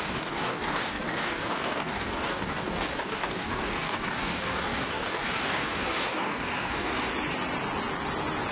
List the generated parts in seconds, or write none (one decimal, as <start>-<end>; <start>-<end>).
0.0-7.1